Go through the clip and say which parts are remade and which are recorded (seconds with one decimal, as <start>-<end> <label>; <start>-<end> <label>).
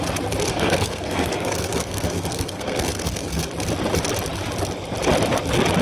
0.0-0.5 recorded; 0.5-3.4 remade; 3.4-5.8 recorded